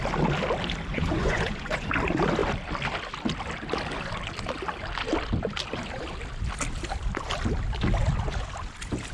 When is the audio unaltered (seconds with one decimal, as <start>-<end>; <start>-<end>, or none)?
0.0-0.9; 1.9-9.1